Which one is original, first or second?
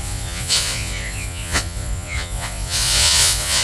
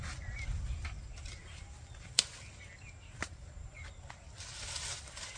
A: second